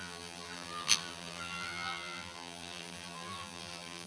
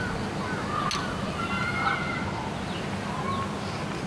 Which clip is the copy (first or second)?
first